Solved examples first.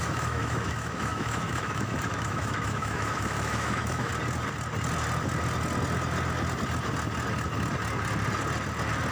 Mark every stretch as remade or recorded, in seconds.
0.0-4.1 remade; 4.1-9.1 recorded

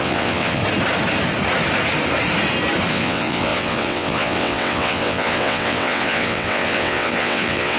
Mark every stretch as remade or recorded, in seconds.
0.0-0.6 remade; 0.6-2.9 recorded; 2.9-7.8 remade

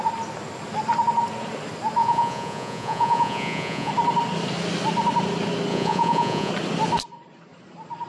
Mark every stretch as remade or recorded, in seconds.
0.0-2.0 recorded; 2.0-3.9 remade; 3.9-5.7 recorded; 5.7-6.5 remade; 6.5-8.1 recorded

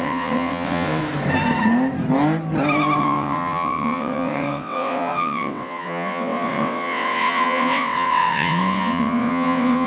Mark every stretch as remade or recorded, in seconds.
0.0-1.0 remade; 1.0-3.0 recorded; 3.0-9.9 remade